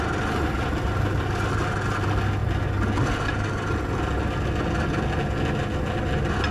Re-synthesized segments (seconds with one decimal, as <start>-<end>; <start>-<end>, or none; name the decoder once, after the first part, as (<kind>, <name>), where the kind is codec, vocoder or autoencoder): none